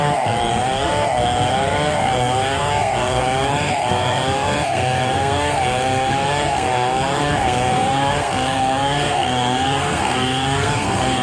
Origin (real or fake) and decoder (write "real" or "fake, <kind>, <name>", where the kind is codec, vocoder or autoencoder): fake, codec, SNAC